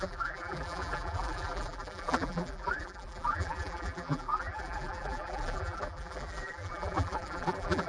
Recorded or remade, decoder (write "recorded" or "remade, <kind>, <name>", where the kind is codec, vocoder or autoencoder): remade, vocoder, BigVGAN v2